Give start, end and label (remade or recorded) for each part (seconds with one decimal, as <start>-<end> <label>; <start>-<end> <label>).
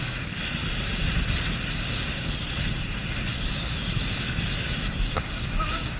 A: 0.0-0.6 remade; 0.6-4.2 recorded; 4.2-6.0 remade